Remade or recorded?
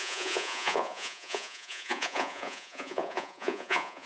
remade